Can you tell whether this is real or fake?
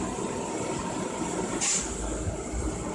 real